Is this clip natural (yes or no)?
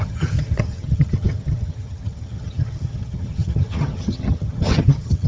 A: no